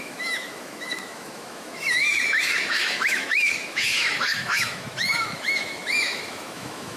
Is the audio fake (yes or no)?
yes